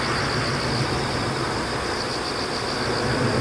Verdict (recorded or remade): recorded